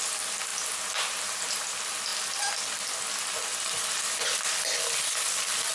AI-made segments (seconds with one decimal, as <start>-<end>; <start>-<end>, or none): none